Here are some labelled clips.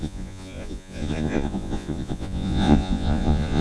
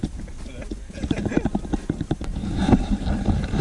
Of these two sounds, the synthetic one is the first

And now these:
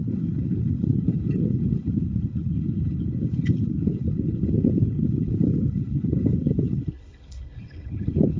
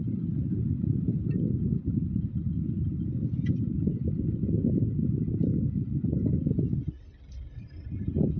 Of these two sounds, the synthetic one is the first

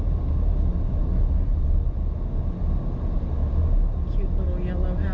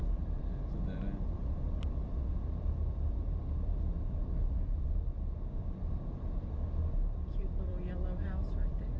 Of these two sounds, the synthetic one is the second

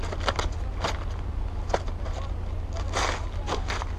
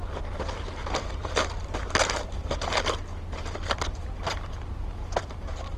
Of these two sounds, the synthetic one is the second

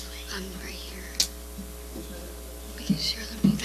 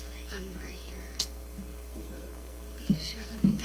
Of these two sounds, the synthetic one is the second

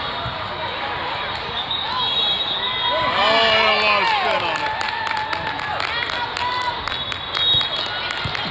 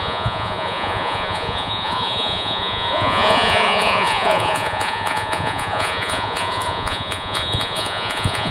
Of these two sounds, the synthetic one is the second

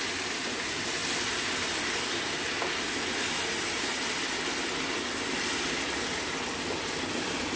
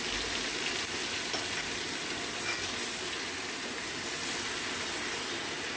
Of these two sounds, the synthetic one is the first